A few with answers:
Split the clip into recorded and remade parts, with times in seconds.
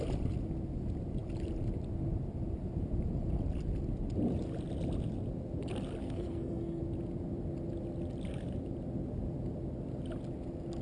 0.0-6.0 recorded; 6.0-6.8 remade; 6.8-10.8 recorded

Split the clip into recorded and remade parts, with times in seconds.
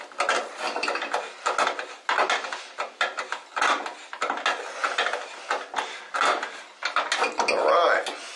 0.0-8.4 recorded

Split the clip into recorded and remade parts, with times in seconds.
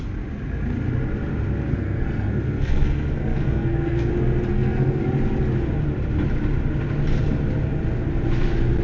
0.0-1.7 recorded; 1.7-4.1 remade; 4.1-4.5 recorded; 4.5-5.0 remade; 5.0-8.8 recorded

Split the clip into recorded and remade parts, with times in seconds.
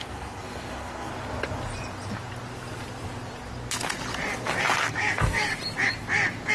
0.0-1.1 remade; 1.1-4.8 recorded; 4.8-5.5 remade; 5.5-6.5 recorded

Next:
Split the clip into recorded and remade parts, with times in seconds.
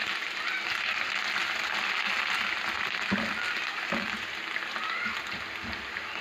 0.0-6.2 recorded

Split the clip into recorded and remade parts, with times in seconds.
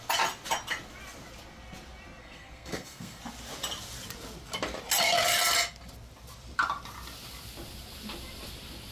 0.0-2.2 recorded; 2.2-3.2 remade; 3.2-8.9 recorded